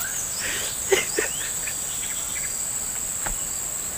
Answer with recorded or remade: recorded